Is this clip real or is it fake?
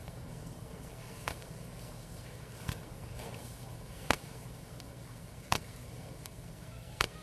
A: fake